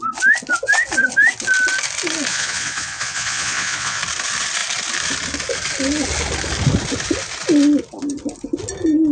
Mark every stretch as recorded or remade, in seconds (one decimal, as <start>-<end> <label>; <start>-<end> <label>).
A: 0.0-2.3 recorded; 2.3-4.0 remade; 4.0-9.1 recorded